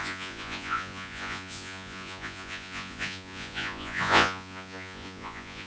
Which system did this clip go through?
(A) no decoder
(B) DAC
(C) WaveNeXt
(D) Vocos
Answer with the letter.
D